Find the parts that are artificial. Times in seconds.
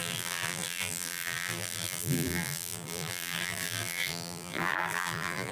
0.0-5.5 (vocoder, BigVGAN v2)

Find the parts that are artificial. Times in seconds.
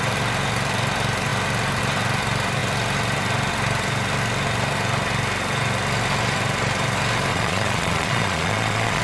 7.3-9.0 (vocoder, Vocos)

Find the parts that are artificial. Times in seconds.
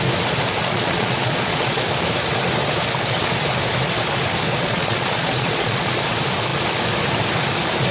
0.6-1.8 (vocoder, Vocos); 4.5-6.1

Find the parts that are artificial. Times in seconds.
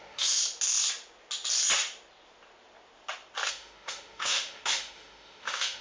0.0-0.4 (autoencoder, DAC-VAE); 3.5-5.8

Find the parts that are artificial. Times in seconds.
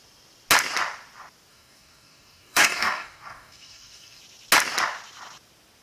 1.5-4.2 (codec, DAC)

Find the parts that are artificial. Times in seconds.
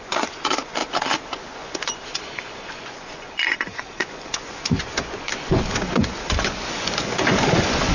0.0-7.9 (vocoder, Vocos)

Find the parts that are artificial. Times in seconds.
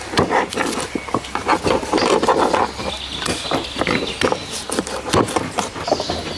none